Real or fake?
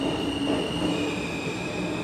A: real